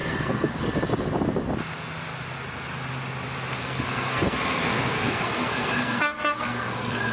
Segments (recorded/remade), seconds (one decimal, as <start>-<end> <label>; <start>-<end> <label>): 0.0-0.6 remade; 0.6-3.6 recorded; 3.6-7.1 remade